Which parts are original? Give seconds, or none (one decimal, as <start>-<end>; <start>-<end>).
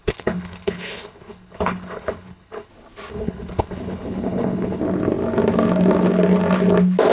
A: 2.7-3.1; 4.8-7.1